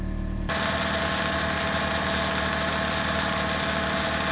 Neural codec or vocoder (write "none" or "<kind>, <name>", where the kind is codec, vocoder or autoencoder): none